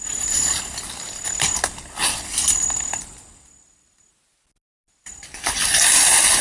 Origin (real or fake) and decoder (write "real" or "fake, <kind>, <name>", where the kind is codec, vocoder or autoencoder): real